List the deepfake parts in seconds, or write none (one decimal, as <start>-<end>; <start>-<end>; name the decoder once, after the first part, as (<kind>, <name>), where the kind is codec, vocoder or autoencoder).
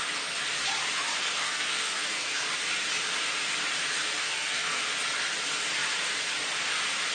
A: 1.2-2.4 (codec, SNAC); 4.2-4.8